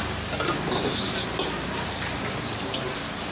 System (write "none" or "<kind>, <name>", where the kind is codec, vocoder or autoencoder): none